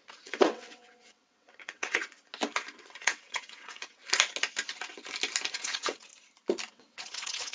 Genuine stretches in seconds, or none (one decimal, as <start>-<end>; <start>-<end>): 2.0-2.8; 4.0-5.5; 6.1-6.7